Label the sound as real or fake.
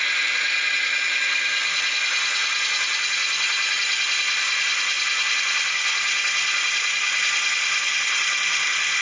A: real